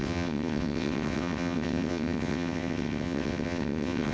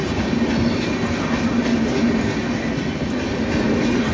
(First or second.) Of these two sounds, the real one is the second